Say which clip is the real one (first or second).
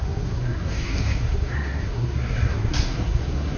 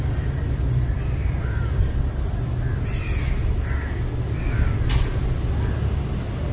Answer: second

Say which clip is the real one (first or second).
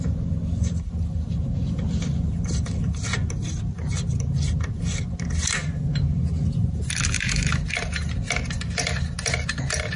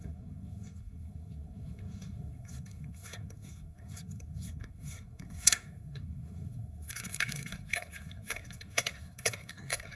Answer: first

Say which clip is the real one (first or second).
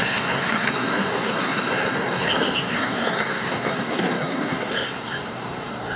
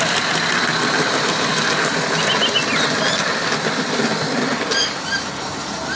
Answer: second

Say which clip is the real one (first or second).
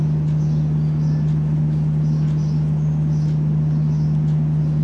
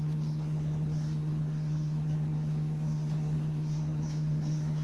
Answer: first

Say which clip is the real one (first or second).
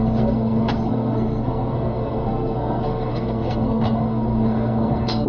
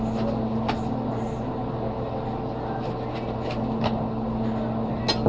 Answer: second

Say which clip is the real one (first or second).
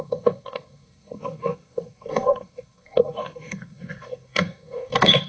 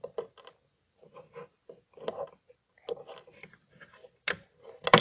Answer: second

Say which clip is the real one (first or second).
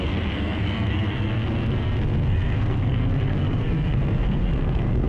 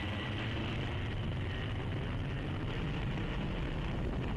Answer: second